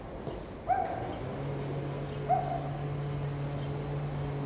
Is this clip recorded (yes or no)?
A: yes